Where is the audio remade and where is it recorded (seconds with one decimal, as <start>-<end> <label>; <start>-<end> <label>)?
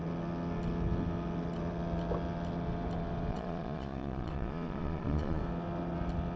0.0-3.3 recorded; 3.3-5.4 remade; 5.4-6.4 recorded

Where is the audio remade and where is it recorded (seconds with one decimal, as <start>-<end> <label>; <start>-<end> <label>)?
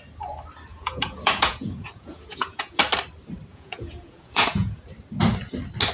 0.0-0.7 recorded; 0.7-2.8 remade; 2.8-3.5 recorded; 3.5-4.8 remade; 4.8-5.9 recorded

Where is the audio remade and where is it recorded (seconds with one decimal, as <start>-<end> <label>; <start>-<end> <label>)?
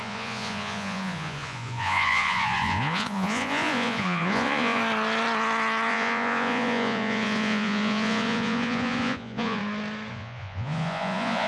0.0-4.8 remade; 4.8-5.9 recorded; 5.9-9.6 remade; 9.6-10.1 recorded; 10.1-11.5 remade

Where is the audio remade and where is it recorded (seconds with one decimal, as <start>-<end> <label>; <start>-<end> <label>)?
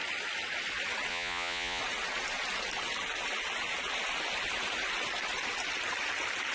0.0-1.1 recorded; 1.1-1.8 remade; 1.8-6.5 recorded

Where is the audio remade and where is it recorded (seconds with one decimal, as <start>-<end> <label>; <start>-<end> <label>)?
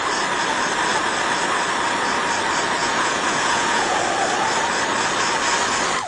0.0-2.8 recorded; 2.8-4.0 remade; 4.0-6.1 recorded